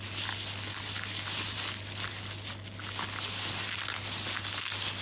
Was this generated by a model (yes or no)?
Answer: no